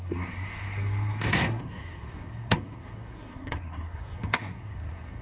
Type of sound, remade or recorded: remade